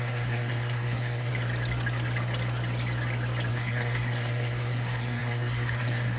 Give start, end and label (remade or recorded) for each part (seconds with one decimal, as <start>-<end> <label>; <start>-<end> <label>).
0.0-1.3 remade; 1.3-3.5 recorded; 3.5-6.2 remade